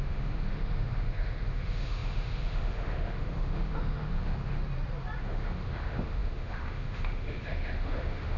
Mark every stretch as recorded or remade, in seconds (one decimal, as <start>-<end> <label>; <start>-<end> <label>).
0.0-4.6 remade; 4.6-5.2 recorded; 5.2-8.4 remade